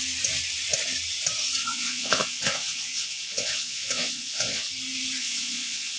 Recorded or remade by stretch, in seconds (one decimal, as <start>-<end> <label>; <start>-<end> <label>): 0.0-1.6 recorded; 1.6-4.7 remade; 4.7-5.2 recorded; 5.2-6.0 remade